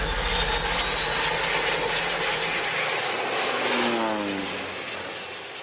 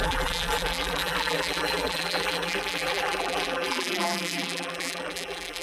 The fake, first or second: second